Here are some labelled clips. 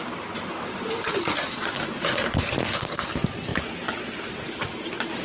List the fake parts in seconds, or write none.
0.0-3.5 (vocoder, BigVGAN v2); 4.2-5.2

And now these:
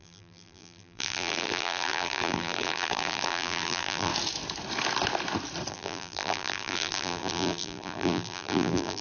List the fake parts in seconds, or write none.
0.0-4.1 (vocoder, BigVGAN v2); 5.7-9.0